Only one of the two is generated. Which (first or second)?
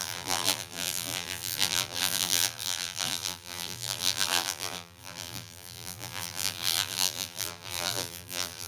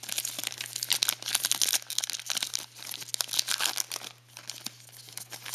first